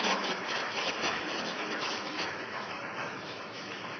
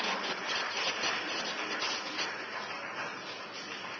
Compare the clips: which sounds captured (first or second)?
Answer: second